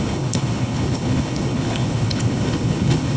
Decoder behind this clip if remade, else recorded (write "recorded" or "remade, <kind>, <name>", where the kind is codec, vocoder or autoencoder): remade, codec, HILCodec